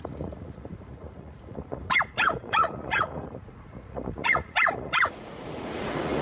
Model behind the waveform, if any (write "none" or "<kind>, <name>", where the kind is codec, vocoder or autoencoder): vocoder, Vocos